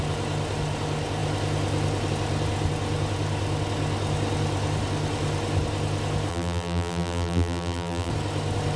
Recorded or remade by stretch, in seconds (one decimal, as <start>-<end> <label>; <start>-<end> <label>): 0.0-6.3 recorded; 6.3-8.1 remade; 8.1-8.8 recorded